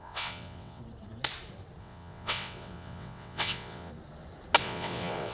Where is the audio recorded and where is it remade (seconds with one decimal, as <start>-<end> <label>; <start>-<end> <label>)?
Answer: 0.0-0.8 remade; 0.8-1.8 recorded; 1.8-3.9 remade; 3.9-4.6 recorded; 4.6-5.3 remade